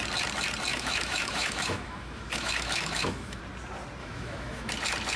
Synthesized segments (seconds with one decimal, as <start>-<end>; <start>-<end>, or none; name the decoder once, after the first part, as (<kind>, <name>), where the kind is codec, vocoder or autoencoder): 0.7-3.4 (autoencoder, DAC-VAE); 4.0-4.7